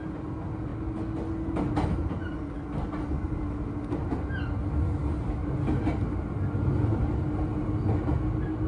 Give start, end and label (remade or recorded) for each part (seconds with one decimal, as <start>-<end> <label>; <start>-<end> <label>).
0.0-8.7 recorded